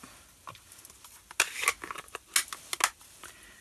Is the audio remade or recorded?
recorded